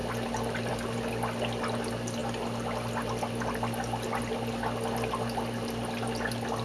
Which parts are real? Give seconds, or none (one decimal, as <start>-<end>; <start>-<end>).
0.0-6.6